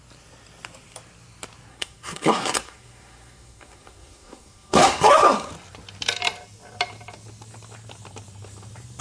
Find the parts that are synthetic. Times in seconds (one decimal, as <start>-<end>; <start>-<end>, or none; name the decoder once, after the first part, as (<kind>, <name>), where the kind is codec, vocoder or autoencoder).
1.7-5.5 (codec, SNAC)